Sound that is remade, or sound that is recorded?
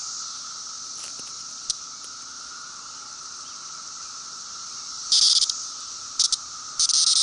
recorded